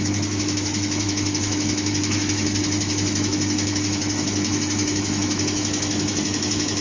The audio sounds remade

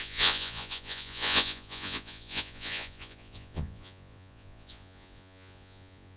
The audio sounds remade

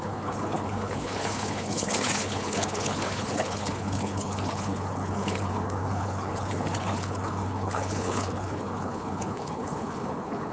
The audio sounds remade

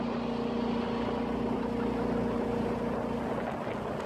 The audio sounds recorded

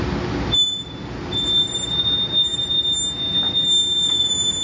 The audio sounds recorded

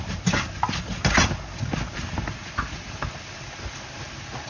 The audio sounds recorded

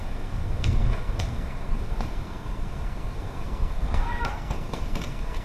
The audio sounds remade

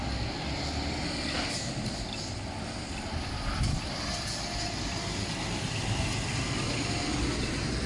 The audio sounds recorded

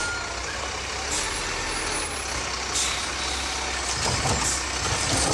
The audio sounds recorded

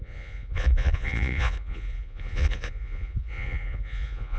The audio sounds remade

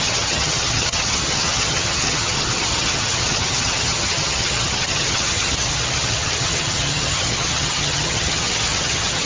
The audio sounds remade